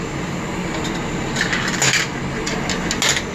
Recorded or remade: recorded